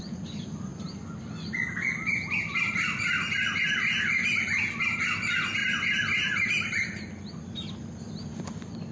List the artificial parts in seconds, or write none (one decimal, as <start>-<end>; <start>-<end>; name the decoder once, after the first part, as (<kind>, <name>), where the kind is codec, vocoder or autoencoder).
none